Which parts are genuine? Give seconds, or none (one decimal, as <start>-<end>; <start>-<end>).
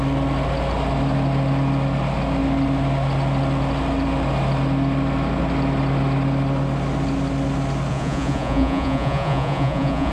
0.0-7.9